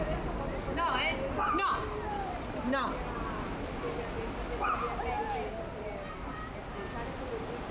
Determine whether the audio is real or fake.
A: real